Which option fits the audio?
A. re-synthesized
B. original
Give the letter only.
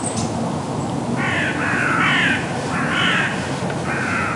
B